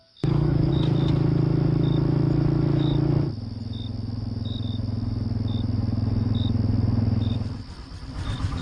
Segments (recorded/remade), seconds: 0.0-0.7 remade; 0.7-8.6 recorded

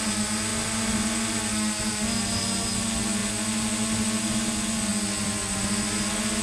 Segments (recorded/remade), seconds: 0.0-6.4 recorded

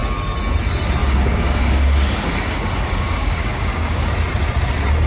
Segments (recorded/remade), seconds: 0.0-1.0 recorded; 1.0-4.1 remade; 4.1-5.1 recorded

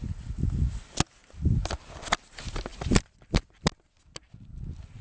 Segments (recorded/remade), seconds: 0.0-5.0 recorded

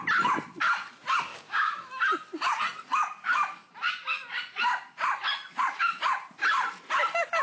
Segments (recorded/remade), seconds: 0.0-1.3 recorded; 1.3-1.9 remade; 1.9-7.4 recorded

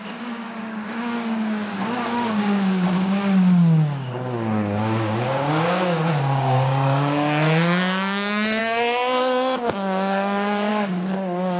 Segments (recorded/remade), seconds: 0.0-11.6 remade

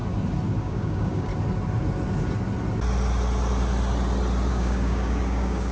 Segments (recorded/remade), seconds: 0.0-0.6 recorded; 0.6-1.3 remade; 1.3-4.5 recorded; 4.5-5.7 remade

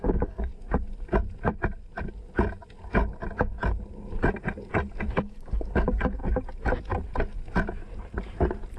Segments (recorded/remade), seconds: 0.0-0.5 remade; 0.5-5.2 recorded; 5.2-6.2 remade; 6.2-8.8 recorded